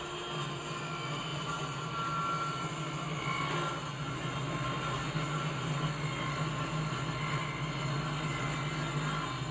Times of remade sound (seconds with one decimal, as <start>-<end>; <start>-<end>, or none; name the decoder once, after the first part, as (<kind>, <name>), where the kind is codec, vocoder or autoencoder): none